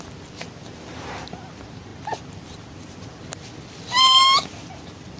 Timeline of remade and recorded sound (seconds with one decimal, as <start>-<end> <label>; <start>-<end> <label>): 0.0-5.2 recorded